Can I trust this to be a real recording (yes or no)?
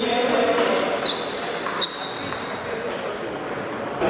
yes